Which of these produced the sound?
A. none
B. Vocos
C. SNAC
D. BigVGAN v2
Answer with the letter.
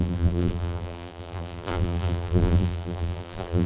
D